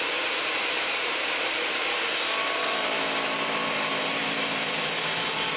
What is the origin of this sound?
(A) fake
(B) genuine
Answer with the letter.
A